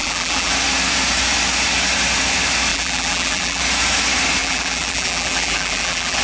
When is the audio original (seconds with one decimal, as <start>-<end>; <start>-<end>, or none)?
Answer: 0.5-2.7; 3.6-4.4